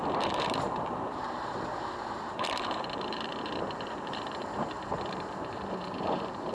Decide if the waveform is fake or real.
fake